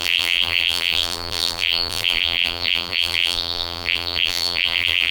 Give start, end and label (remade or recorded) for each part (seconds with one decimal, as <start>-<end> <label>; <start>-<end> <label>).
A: 0.0-5.1 remade